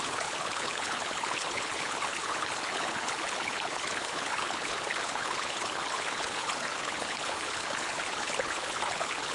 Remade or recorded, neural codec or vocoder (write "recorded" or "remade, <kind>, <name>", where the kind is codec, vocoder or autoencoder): remade, codec, HILCodec